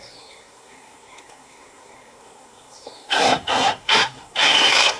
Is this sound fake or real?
fake